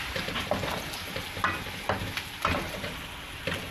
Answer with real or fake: real